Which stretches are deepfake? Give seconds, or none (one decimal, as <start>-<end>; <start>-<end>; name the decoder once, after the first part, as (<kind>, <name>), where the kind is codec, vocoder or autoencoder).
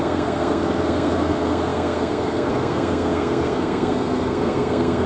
0.0-5.1 (codec, SNAC)